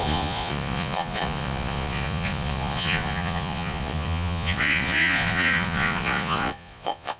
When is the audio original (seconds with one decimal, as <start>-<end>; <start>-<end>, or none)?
none